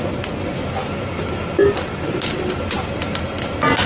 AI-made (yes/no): no